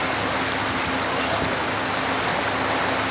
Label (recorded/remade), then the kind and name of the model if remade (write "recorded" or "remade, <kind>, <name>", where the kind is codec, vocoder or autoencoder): recorded